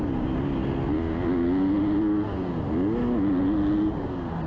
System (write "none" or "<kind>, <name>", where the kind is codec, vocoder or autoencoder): none